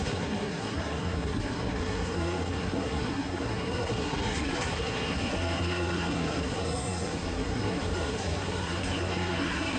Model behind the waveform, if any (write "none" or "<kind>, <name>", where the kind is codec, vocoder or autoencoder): codec, SNAC